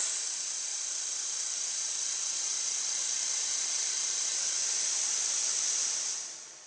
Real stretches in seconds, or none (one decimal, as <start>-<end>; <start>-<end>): 0.0-0.7; 3.3-3.8; 5.6-6.7